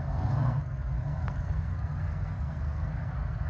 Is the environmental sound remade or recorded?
remade